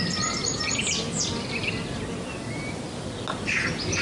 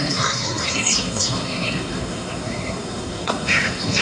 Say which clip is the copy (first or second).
second